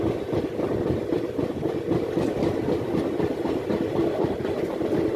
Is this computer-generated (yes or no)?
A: yes